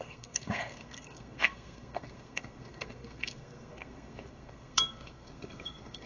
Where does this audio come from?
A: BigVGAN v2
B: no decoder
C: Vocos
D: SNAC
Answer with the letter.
D